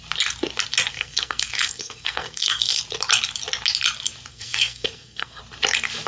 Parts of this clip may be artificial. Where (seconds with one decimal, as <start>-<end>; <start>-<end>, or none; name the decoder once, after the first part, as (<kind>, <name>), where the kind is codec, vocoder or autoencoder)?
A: 0.9-2.8 (codec, SNAC); 4.3-5.4